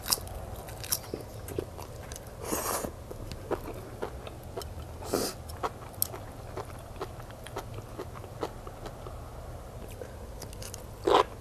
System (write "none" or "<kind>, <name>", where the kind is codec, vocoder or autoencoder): none